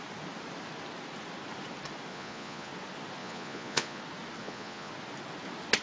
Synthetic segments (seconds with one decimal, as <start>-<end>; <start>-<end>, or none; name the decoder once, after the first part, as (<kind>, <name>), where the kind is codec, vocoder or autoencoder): 2.1-2.7 (vocoder, Vocos); 3.2-4.0; 4.4-4.9